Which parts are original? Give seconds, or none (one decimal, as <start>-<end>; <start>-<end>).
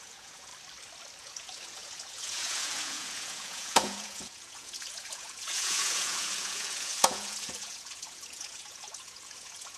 0.5-1.2